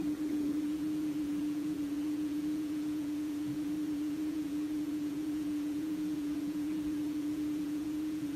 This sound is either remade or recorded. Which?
remade